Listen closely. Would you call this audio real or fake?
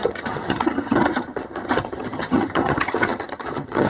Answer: fake